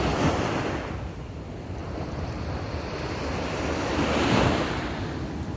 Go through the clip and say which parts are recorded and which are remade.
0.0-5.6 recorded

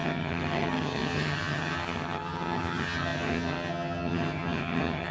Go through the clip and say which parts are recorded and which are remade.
0.0-5.1 remade

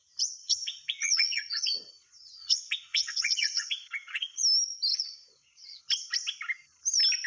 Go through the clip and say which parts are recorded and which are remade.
0.0-0.4 recorded; 0.4-4.4 remade; 4.4-4.9 recorded; 4.9-5.8 remade; 5.8-7.3 recorded

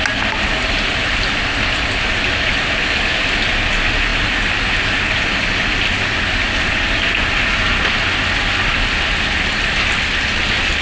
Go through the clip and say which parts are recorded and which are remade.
0.0-10.8 recorded

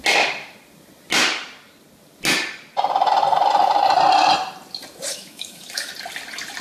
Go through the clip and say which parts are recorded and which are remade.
0.0-5.1 recorded; 5.1-5.9 remade; 5.9-6.6 recorded